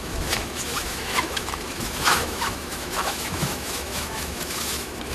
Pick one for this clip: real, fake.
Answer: fake